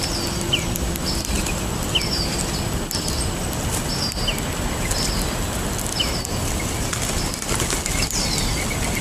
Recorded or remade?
recorded